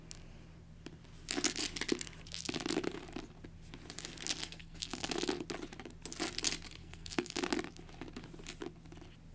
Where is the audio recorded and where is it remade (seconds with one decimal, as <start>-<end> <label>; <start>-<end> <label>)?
0.0-4.4 recorded; 4.4-5.1 remade; 5.1-6.8 recorded; 6.8-7.4 remade; 7.4-9.3 recorded